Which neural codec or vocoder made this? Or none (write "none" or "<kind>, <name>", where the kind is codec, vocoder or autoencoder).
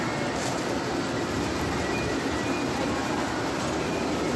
none